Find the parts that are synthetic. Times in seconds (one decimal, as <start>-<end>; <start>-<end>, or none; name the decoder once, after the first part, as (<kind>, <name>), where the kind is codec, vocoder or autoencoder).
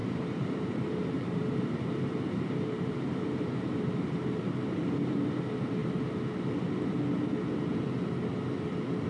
0.0-5.2 (vocoder, BigVGAN v2)